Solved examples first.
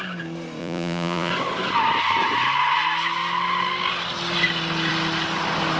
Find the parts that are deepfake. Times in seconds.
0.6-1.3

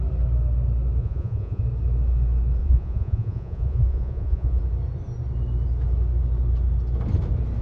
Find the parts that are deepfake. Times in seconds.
1.0-1.6; 2.6-4.6